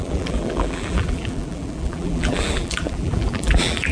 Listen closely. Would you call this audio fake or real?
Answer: fake